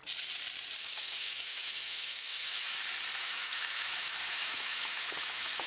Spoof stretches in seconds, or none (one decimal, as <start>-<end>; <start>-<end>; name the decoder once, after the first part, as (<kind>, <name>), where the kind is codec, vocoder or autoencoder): 0.8-2.7 (autoencoder, DAC-VAE); 3.2-5.7